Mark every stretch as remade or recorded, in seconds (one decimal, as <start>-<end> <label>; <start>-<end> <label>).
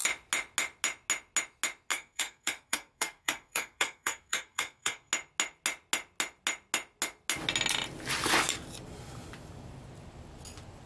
0.0-1.9 recorded; 1.9-5.1 remade; 5.1-10.9 recorded